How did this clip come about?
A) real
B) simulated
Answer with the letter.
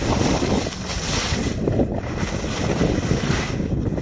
A